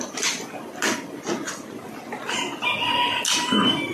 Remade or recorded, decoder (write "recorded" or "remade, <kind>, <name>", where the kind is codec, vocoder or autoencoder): recorded